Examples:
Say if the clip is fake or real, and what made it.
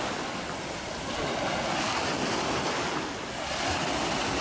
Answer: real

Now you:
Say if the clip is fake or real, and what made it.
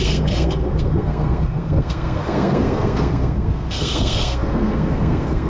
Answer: fake, codec, SNAC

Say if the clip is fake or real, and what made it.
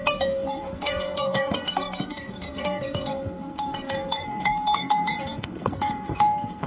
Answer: fake, codec, SNAC